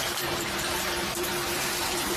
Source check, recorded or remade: remade